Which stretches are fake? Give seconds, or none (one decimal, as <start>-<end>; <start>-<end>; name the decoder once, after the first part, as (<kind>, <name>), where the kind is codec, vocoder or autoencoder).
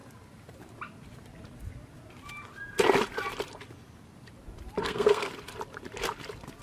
4.8-5.3 (codec, SNAC)